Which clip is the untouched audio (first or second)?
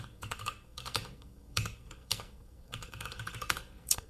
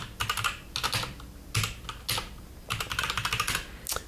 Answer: second